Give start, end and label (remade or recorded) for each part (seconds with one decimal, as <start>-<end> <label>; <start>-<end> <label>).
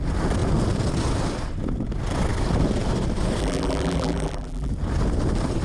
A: 0.0-3.4 recorded; 3.4-4.7 remade; 4.7-5.6 recorded